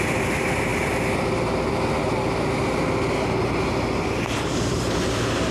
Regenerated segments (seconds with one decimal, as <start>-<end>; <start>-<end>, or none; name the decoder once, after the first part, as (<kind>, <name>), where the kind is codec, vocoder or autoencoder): 0.0-0.7 (vocoder, BigVGAN v2); 4.0-5.5